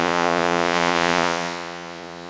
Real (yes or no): no